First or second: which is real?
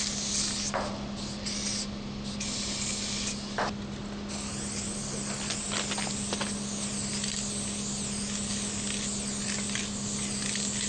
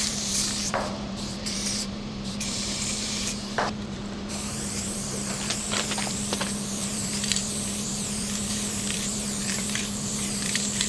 first